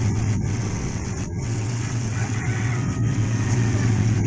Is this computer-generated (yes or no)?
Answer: yes